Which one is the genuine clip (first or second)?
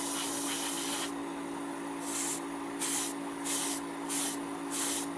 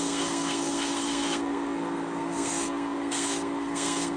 first